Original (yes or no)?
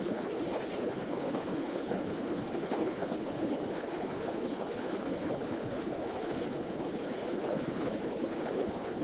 no